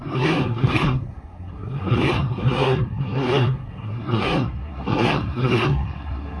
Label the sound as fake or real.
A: fake